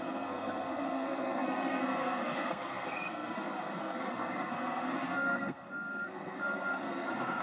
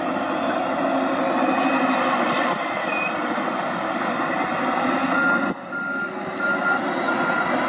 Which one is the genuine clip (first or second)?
second